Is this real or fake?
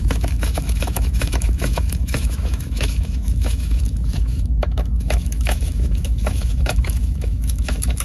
fake